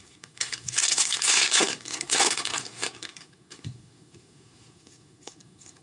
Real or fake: fake